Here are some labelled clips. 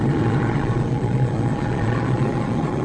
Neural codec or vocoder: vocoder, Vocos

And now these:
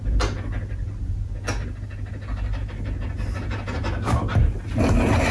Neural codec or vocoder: none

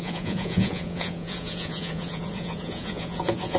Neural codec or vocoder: vocoder, Vocos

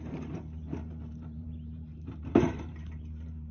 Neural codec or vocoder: vocoder, BigVGAN v2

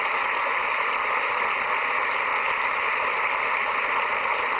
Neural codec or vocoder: none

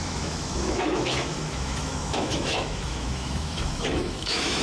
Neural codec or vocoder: autoencoder, DAC-VAE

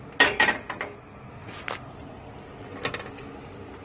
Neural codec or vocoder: none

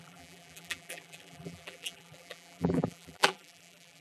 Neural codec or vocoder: vocoder, BigVGAN v2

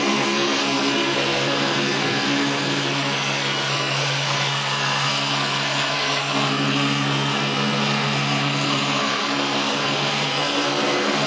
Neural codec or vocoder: codec, SNAC